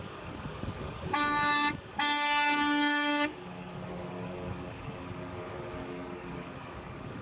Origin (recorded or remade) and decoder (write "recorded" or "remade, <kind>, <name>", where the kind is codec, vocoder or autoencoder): remade, codec, DAC